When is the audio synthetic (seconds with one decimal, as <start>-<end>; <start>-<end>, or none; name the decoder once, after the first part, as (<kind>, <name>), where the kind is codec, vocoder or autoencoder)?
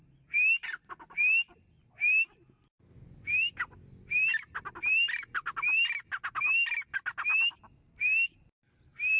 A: none